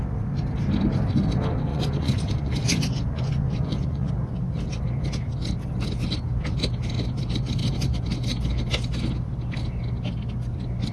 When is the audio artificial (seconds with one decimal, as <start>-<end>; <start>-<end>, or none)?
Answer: 1.7-4.1